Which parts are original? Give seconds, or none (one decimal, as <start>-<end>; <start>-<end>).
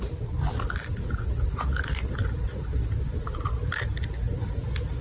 0.0-5.0